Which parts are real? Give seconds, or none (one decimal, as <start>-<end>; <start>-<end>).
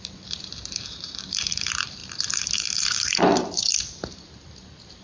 none